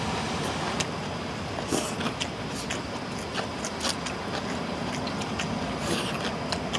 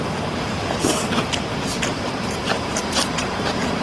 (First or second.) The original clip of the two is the first